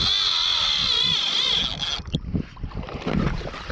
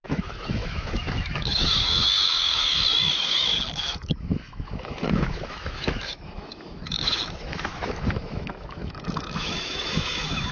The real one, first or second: first